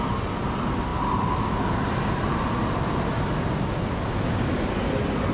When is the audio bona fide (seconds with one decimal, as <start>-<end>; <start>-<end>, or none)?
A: 0.0-5.3

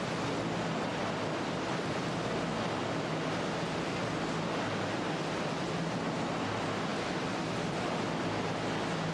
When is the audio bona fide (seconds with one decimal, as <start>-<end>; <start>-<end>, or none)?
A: 0.0-9.1

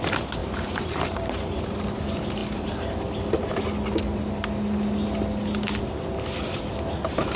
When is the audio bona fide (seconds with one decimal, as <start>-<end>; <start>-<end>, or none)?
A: 0.0-0.4; 1.9-7.4

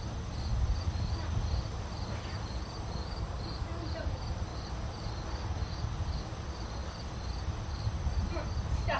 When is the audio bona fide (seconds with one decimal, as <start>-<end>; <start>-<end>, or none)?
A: 0.0-9.0

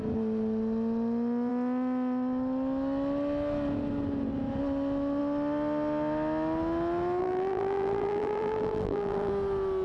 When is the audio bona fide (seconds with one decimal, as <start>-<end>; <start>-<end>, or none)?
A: 0.0-7.2; 9.3-9.8

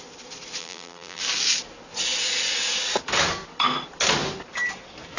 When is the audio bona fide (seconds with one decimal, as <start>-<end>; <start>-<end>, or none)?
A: 0.0-0.6; 1.2-5.2

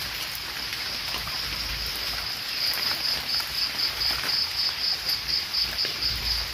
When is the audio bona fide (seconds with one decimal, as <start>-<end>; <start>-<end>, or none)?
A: 0.7-1.7; 3.3-5.8

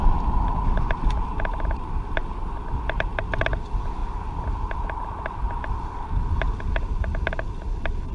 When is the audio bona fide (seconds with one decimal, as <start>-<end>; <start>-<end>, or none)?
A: 0.0-8.1